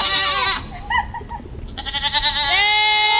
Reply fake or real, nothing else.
real